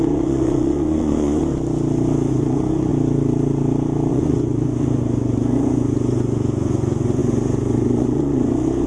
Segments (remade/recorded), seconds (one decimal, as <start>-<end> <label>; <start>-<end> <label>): 0.0-1.4 remade; 1.4-2.3 recorded; 2.3-2.9 remade; 2.9-4.1 recorded; 4.1-8.9 remade